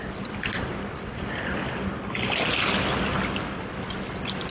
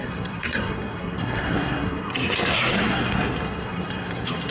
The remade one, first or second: second